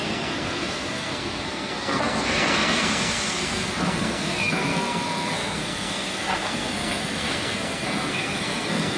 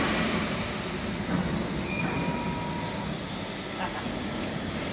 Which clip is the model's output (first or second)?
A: first